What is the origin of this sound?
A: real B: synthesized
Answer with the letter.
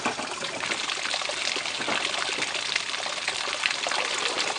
A